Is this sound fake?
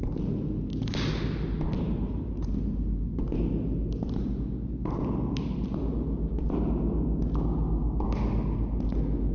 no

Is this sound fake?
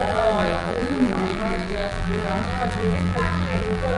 yes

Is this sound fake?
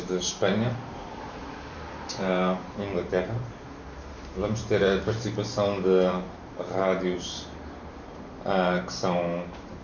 yes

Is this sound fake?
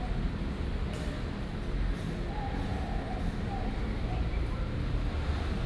no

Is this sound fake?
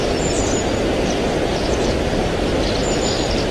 no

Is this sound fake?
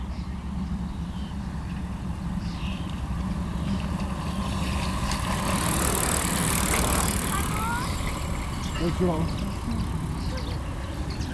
no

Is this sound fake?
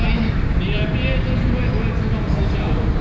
yes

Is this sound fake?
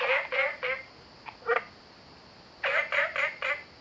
no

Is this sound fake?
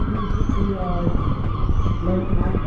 no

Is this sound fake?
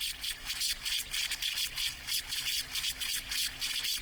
no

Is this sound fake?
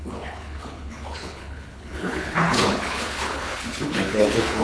yes